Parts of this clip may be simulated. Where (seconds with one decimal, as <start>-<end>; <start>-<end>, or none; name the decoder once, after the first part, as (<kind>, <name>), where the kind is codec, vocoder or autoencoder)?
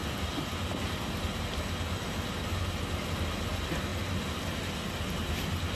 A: none